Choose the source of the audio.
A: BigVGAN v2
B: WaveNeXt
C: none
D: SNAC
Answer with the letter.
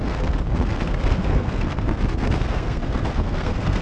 D